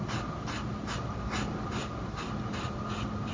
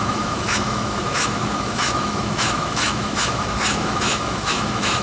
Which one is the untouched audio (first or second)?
first